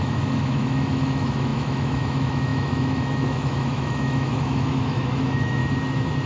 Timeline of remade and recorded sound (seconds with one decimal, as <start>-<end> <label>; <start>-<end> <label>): 0.0-5.6 remade; 5.6-6.3 recorded